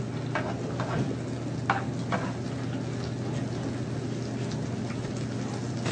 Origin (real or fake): real